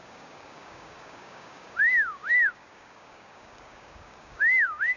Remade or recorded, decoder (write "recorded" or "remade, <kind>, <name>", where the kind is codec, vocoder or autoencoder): remade, codec, DAC